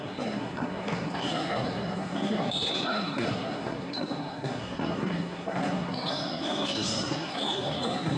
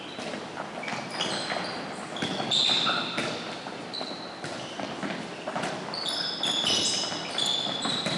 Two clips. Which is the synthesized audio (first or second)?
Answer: first